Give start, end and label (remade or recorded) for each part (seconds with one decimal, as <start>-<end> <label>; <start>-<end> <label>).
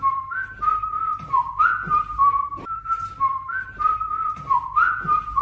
0.0-1.1 recorded; 1.1-1.7 remade; 1.7-2.2 recorded; 2.2-5.4 remade